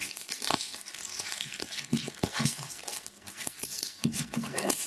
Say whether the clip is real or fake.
fake